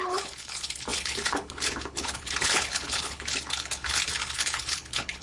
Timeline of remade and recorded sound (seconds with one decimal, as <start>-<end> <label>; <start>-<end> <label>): 0.0-5.2 remade